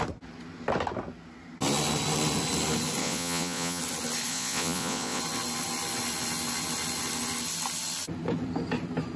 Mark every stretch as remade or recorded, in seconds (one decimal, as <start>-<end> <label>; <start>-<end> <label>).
0.0-3.0 recorded; 3.0-3.8 remade; 3.8-4.3 recorded; 4.3-5.2 remade; 5.2-9.2 recorded